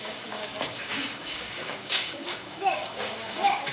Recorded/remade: remade